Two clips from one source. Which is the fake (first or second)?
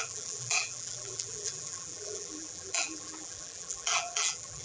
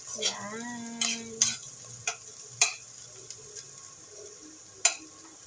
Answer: first